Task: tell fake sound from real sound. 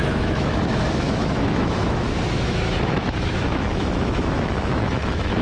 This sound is fake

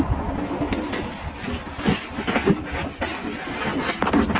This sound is real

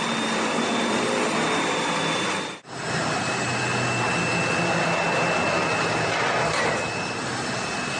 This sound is real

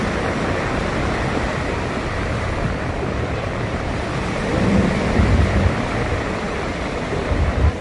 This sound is fake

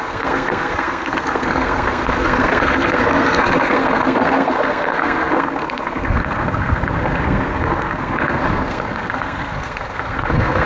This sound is fake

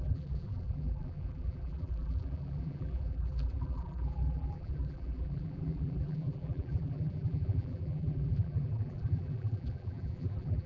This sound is fake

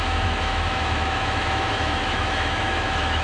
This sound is fake